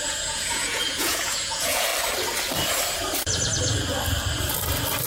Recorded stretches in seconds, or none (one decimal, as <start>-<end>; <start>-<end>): 1.9-5.1